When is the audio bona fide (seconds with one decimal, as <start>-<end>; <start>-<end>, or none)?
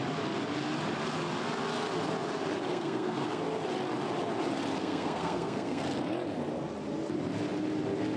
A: 0.0-2.7; 3.4-4.8; 5.8-8.2